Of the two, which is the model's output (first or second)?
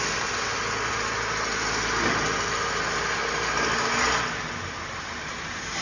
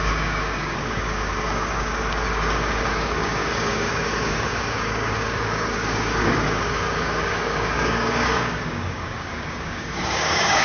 second